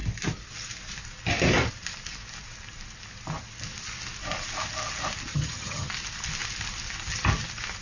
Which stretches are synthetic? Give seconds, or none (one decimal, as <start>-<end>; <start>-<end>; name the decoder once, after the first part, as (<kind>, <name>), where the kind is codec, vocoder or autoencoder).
5.3-5.9 (vocoder, HiFi-GAN)